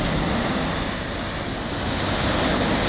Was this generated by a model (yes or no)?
no